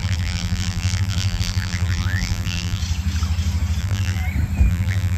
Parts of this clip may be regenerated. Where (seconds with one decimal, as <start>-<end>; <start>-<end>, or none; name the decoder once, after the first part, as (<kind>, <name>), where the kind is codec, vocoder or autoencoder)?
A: 0.0-2.8 (vocoder, BigVGAN v2); 3.8-4.2; 4.7-5.2